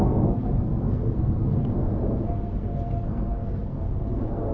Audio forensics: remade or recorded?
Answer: remade